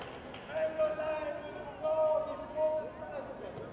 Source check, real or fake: real